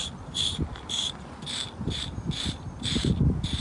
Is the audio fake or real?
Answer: real